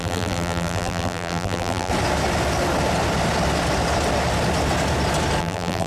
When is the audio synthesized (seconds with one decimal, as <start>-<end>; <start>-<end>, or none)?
0.0-1.9; 5.4-5.9